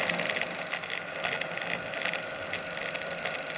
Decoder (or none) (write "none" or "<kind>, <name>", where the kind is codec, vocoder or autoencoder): none